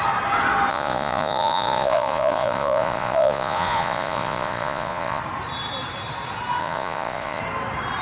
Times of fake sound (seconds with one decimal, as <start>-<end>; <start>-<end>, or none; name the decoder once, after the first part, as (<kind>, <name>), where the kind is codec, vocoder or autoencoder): 0.7-5.2 (vocoder, Vocos); 6.6-7.4